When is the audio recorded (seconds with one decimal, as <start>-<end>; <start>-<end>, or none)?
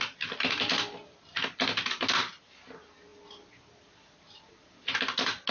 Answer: 0.0-5.5